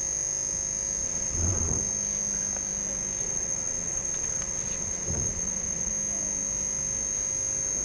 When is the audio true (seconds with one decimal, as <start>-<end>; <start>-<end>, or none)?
0.0-1.0; 1.8-3.2; 5.9-7.8